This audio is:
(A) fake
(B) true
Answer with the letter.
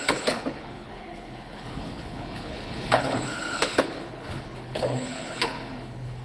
A